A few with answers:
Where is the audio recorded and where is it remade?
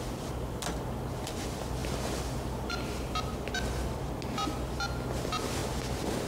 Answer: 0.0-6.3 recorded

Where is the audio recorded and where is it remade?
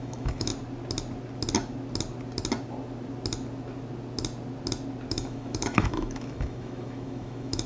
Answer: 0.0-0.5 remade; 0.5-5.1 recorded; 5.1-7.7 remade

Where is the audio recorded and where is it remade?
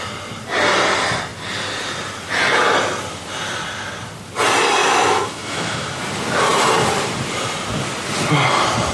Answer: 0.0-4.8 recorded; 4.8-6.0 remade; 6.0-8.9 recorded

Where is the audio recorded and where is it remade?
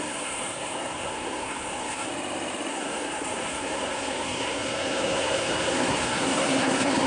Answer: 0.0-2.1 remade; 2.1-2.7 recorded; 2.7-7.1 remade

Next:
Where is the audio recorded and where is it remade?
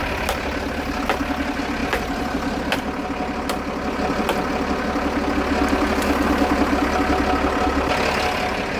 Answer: 0.0-8.8 recorded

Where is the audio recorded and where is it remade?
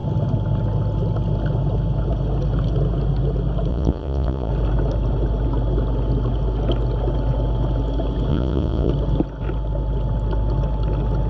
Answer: 0.0-3.7 recorded; 3.7-4.5 remade; 4.5-8.3 recorded; 8.3-8.9 remade; 8.9-11.3 recorded